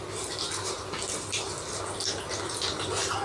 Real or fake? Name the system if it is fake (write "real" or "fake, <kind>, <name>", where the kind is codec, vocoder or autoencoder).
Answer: real